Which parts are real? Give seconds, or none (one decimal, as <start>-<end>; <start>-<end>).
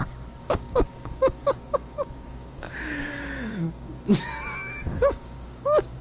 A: 0.0-0.4; 4.0-4.9